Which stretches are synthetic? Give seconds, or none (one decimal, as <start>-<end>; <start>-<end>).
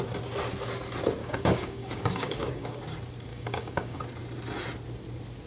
1.2-2.8; 3.3-4.0